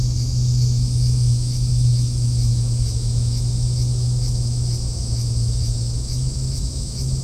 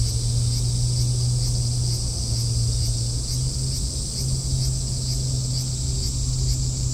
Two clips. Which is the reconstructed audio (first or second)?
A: first